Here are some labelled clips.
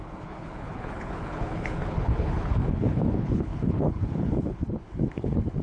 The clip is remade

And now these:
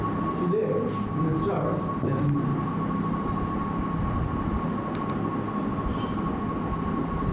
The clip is recorded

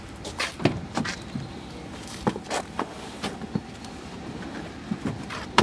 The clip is remade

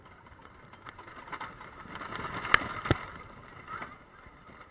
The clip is recorded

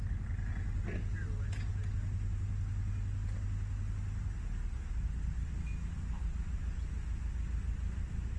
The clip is recorded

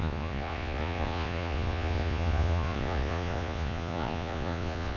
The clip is remade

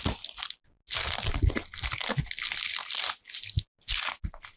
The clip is recorded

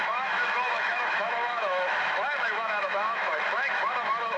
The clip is remade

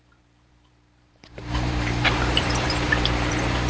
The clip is remade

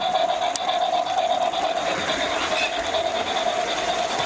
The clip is recorded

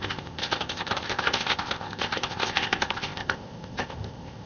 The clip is remade